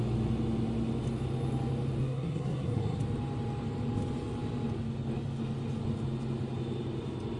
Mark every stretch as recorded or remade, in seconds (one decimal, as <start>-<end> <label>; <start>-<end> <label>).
0.0-2.0 recorded; 2.0-3.0 remade; 3.0-7.4 recorded